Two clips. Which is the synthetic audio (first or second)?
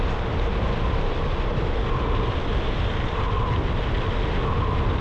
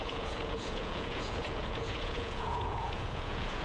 second